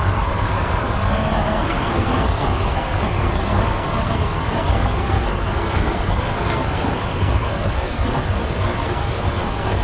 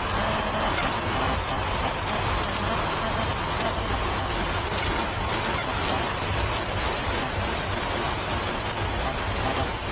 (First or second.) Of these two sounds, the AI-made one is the first